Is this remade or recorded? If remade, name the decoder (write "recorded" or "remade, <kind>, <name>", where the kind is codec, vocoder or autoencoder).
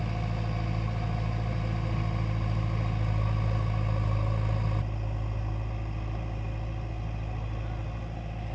recorded